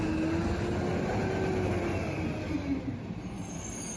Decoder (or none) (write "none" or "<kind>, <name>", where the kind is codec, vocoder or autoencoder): none